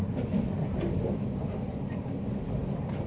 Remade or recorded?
recorded